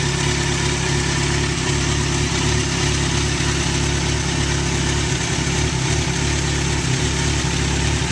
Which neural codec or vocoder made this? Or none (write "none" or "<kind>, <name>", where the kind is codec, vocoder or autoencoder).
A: none